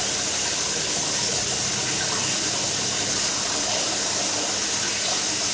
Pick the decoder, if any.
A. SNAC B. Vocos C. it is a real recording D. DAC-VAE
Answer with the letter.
C